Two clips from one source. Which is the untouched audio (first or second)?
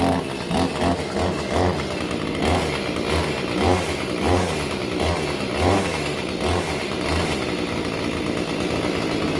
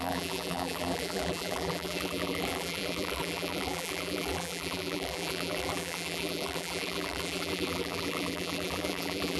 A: first